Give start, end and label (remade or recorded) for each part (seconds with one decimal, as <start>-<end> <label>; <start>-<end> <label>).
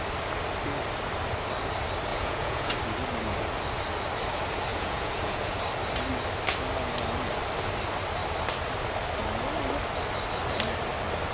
0.0-2.1 recorded; 2.1-2.7 remade; 2.7-4.7 recorded; 4.7-5.6 remade; 5.6-11.3 recorded